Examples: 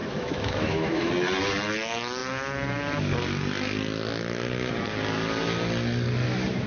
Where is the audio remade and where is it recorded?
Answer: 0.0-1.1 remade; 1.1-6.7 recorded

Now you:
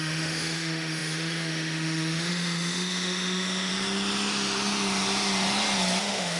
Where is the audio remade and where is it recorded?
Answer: 0.0-3.7 remade; 3.7-6.0 recorded; 6.0-6.4 remade